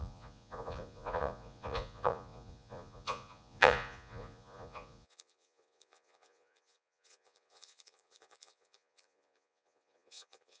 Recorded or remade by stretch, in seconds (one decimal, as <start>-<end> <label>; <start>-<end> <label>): 0.0-10.6 remade